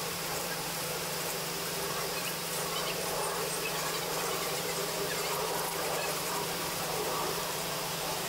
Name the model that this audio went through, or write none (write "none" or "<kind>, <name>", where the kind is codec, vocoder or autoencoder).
vocoder, BigVGAN v2